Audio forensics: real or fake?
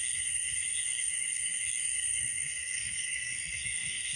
fake